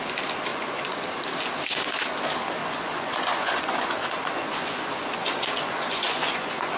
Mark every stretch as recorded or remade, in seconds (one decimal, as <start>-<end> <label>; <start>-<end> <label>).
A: 0.0-0.5 recorded; 0.5-1.1 remade; 1.1-2.6 recorded; 2.6-6.8 remade

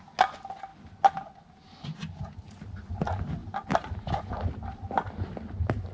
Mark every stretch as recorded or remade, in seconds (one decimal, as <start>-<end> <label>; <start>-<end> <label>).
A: 0.0-5.9 recorded